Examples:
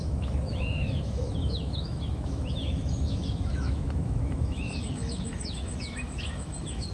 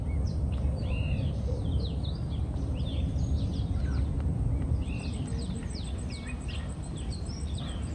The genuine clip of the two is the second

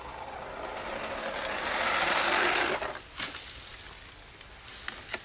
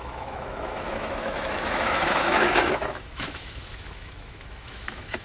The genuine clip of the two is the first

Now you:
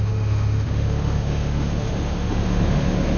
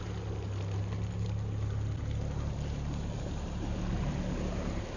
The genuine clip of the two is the second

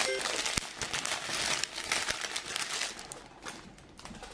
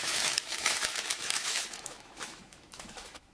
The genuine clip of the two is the first